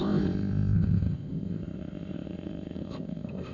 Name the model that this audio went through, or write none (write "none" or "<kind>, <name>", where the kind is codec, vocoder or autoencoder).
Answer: codec, ZipCodec